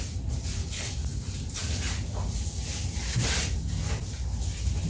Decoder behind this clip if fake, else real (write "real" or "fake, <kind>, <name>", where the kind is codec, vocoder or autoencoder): real